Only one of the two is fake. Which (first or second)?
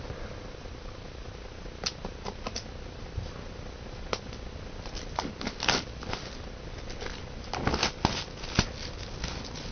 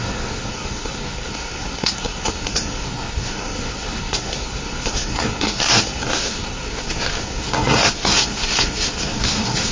second